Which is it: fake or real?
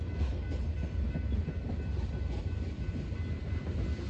real